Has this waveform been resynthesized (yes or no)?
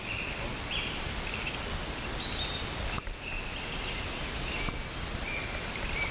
no